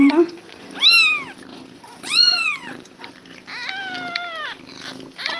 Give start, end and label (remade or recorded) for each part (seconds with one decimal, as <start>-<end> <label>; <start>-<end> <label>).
0.0-0.7 remade; 0.7-1.5 recorded; 1.5-3.1 remade; 3.1-5.4 recorded